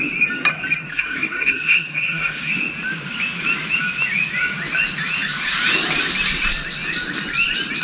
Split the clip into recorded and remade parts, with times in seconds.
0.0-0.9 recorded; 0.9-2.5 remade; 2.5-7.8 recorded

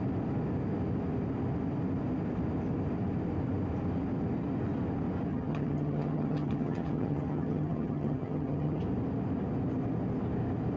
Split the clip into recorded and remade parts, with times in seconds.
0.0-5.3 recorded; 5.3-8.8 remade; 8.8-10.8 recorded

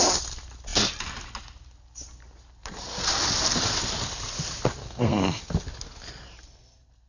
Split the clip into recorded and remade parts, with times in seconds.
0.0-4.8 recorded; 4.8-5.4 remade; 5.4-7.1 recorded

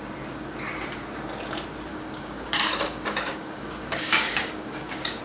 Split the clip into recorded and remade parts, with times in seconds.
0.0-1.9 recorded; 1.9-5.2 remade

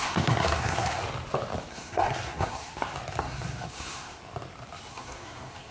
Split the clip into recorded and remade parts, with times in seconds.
0.0-1.0 remade; 1.0-1.7 recorded; 1.7-2.7 remade; 2.7-3.2 recorded; 3.2-4.2 remade; 4.2-4.9 recorded; 4.9-5.7 remade

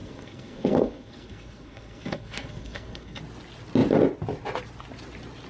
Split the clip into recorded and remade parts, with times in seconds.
0.0-3.2 remade; 3.2-5.5 recorded